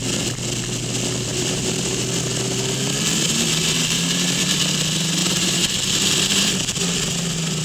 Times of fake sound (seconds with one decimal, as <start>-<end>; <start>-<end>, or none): 1.3-2.0; 3.6-4.6; 5.2-6.5